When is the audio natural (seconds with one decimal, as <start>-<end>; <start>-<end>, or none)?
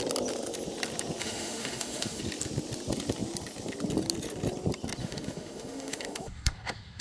0.0-1.2; 2.2-5.0